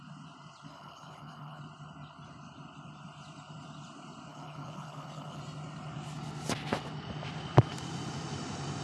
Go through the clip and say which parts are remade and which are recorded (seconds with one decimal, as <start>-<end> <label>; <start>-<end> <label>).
0.0-0.7 recorded; 0.7-1.6 remade; 1.6-4.3 recorded; 4.3-5.4 remade; 5.4-8.8 recorded